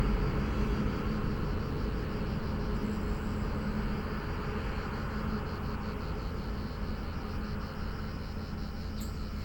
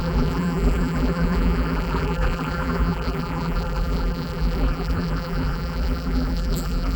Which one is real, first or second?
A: first